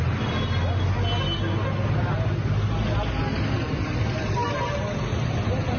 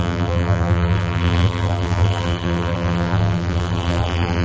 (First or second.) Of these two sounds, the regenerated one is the second